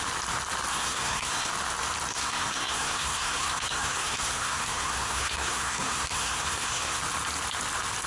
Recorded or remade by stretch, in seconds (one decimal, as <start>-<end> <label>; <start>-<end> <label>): 0.0-0.7 recorded; 0.7-1.5 remade; 1.5-2.1 recorded; 2.1-7.0 remade; 7.0-8.1 recorded